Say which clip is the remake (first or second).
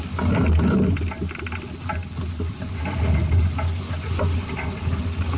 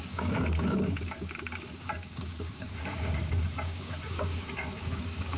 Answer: second